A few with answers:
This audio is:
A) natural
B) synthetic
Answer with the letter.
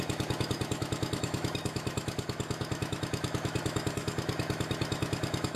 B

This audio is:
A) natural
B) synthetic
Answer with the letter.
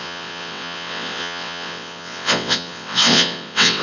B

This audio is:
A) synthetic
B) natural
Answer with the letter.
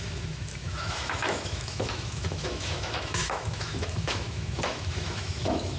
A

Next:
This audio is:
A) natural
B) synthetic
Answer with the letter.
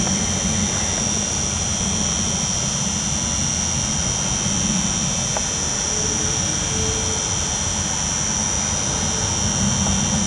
A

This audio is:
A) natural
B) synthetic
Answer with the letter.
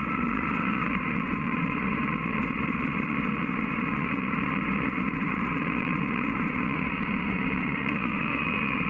B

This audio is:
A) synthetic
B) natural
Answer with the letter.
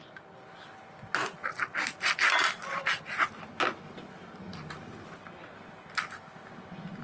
B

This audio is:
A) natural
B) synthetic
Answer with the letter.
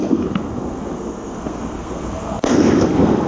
B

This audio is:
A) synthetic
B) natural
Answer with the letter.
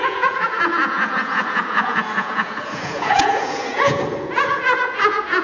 A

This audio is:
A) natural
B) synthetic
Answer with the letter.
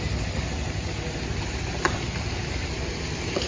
A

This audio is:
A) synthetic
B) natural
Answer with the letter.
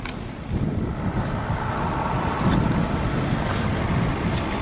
B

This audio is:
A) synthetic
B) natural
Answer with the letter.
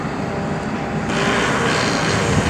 B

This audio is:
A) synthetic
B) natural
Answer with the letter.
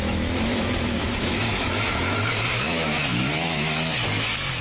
A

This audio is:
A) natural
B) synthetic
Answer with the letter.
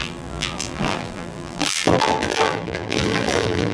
B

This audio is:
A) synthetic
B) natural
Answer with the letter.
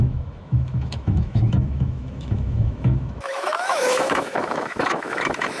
A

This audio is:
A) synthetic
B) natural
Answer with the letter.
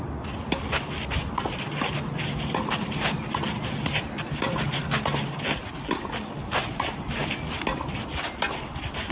B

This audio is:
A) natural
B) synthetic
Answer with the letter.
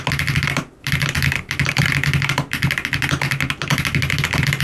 A